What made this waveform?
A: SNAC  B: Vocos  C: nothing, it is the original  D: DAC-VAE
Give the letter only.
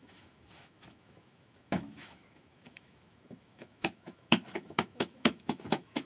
D